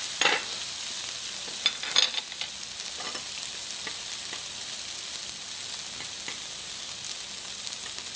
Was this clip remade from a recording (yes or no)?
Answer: no